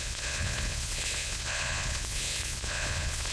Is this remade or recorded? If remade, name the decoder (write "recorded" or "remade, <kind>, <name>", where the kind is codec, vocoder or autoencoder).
remade, vocoder, Vocos